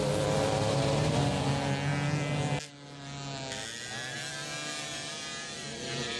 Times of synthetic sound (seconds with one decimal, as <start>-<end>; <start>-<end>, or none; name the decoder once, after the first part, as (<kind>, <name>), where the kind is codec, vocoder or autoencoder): none